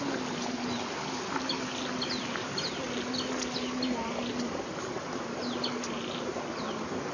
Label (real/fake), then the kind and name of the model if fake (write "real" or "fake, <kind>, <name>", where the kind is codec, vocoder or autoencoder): real